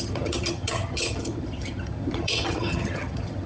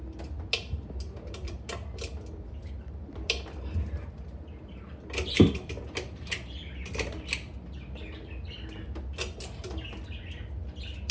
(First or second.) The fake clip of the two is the first